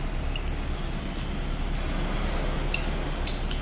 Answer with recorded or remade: recorded